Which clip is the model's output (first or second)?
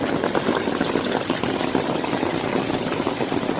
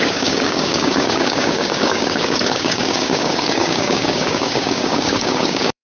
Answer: second